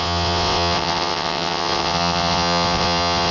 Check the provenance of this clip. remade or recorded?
remade